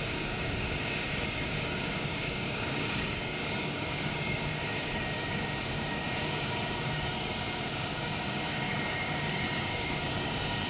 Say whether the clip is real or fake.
fake